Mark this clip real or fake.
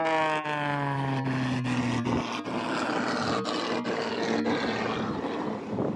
real